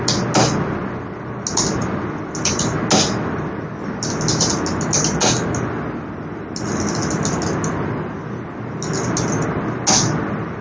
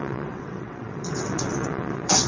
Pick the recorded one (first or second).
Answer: first